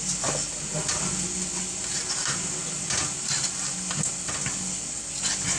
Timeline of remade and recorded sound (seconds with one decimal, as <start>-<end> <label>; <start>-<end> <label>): 0.0-5.6 recorded